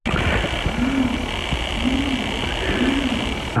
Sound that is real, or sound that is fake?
real